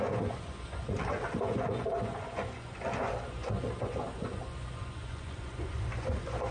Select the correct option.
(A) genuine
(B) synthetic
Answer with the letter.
B